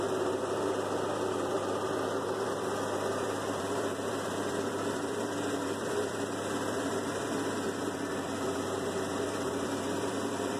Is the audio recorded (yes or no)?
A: no